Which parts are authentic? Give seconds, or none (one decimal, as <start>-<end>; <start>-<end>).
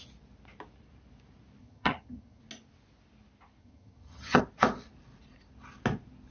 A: 0.0-1.6; 2.4-3.6; 4.4-6.3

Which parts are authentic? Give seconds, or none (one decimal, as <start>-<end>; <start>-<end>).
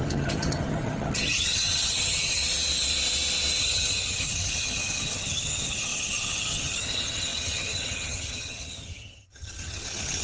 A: 2.4-3.6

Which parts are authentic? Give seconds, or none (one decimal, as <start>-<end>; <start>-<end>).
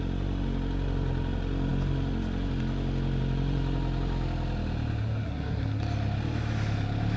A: 0.0-5.0; 5.8-7.2